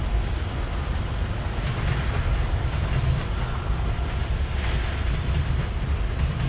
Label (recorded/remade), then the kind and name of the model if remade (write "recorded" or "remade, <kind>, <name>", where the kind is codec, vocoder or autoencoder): recorded